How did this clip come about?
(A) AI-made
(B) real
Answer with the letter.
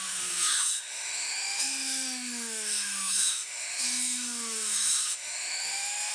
A